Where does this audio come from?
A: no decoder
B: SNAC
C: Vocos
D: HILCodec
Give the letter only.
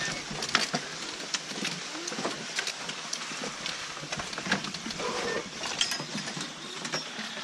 A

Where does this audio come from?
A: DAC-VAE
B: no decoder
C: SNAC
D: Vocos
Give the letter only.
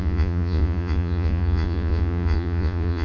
D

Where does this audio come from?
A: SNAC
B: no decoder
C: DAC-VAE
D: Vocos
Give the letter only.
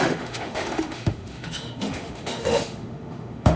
C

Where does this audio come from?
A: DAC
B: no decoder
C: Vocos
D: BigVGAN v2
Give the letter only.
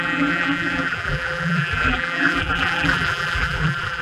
D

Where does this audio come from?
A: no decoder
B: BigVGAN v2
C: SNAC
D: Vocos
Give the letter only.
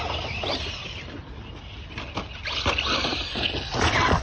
A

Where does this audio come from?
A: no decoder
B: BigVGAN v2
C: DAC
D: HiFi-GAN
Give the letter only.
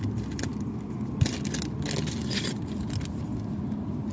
A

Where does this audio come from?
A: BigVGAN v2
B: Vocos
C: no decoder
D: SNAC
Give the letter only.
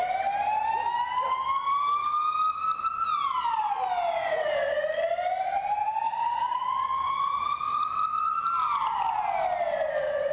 C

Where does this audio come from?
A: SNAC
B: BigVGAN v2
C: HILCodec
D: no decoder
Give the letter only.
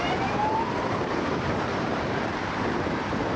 B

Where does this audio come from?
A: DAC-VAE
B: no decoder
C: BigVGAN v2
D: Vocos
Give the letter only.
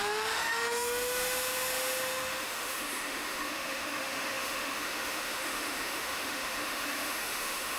A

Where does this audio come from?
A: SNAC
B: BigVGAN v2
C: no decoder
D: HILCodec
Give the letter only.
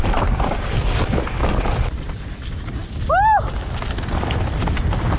C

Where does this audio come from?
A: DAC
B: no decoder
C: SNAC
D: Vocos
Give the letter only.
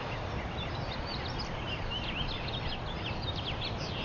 B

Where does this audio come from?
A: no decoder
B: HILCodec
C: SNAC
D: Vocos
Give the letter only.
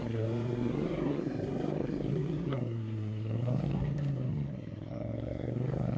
C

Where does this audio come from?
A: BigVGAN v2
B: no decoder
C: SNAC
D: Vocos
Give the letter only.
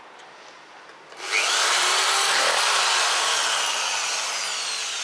B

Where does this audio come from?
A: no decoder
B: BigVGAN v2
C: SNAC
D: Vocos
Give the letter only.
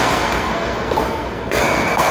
C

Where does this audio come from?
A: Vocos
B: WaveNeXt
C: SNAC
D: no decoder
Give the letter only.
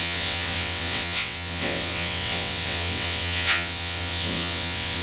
B